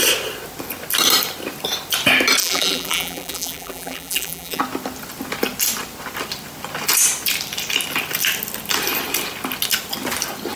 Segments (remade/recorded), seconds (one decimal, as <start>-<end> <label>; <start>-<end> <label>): 0.0-2.4 recorded; 2.4-4.6 remade; 4.6-10.6 recorded

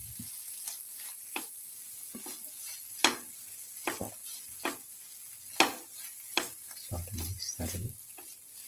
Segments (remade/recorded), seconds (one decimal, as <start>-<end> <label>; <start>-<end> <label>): 0.0-8.7 recorded

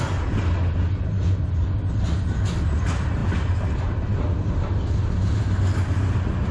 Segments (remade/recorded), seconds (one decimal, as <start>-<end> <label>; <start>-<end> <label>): 0.0-6.5 recorded

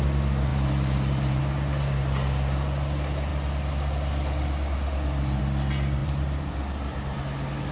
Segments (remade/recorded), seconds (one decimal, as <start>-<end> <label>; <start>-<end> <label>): 0.0-0.5 recorded; 0.5-1.4 remade; 1.4-6.0 recorded; 6.0-7.2 remade; 7.2-7.7 recorded

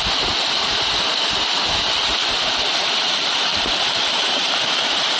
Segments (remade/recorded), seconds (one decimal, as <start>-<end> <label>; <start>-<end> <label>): 0.0-5.2 recorded

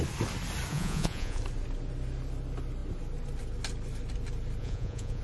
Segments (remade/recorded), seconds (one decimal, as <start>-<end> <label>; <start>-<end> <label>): 0.0-0.7 recorded; 0.7-1.4 remade; 1.4-4.6 recorded; 4.6-5.2 remade

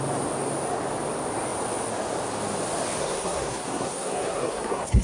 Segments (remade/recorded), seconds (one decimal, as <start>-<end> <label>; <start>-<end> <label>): 0.0-3.0 recorded; 3.0-5.0 remade